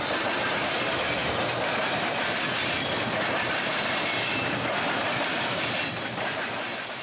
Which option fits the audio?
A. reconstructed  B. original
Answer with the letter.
A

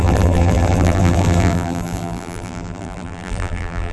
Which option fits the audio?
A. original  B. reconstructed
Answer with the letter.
B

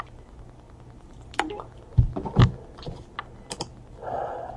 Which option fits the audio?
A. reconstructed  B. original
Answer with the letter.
B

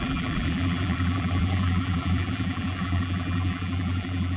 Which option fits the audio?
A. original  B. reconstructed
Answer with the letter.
B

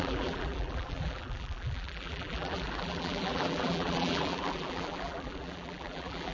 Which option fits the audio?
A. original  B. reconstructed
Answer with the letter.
B